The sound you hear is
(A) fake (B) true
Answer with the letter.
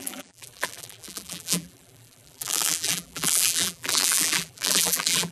A